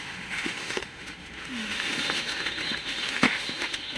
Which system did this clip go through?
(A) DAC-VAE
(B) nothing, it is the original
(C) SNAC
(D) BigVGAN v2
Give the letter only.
A